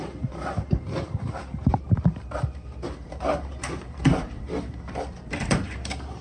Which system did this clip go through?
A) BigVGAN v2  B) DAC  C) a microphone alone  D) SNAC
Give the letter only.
A